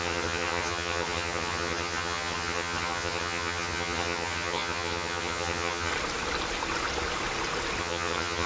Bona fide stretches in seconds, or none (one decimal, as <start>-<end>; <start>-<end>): 5.9-7.8